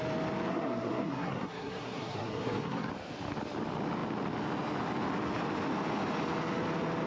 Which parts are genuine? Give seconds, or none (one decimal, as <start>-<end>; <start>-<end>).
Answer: 0.0-0.5; 2.9-7.1

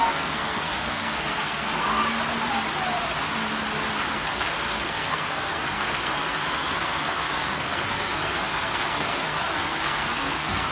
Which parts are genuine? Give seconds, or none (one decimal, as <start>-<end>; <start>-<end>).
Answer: 2.0-4.1